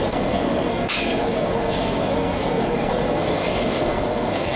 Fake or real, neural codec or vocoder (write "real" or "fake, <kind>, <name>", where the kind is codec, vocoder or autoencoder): fake, codec, SNAC